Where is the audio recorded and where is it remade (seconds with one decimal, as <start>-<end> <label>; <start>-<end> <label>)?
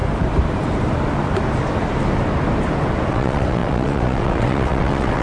0.0-3.1 recorded; 3.1-5.2 remade